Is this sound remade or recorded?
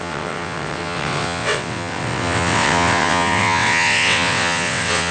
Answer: remade